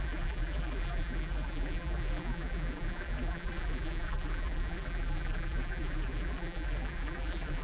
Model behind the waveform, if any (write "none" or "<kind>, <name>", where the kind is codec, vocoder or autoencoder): vocoder, BigVGAN v2